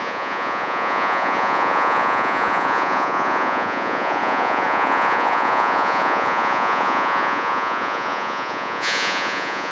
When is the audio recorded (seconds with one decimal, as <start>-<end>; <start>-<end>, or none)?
none